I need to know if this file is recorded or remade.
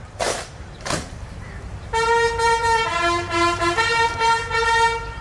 remade